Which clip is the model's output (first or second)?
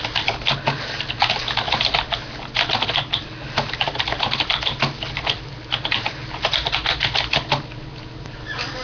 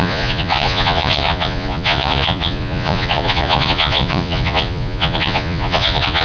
second